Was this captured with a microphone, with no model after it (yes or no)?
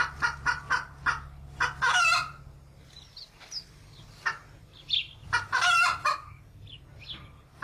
yes